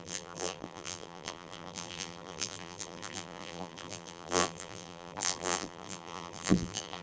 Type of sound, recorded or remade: remade